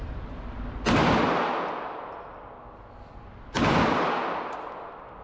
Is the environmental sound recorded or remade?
recorded